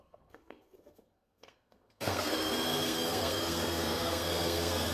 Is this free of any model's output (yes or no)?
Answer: no